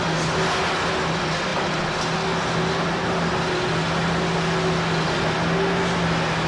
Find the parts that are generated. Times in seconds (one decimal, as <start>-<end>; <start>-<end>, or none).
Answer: none